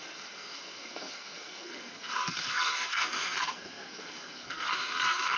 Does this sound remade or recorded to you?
remade